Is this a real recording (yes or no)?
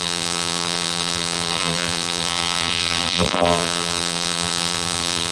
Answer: no